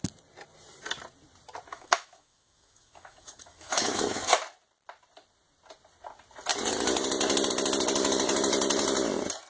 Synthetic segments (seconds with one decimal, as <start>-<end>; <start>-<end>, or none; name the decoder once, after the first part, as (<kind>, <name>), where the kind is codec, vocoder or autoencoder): 1.7-4.3 (autoencoder, DAC-VAE)